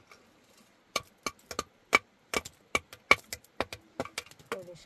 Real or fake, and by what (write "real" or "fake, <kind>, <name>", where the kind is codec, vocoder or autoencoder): real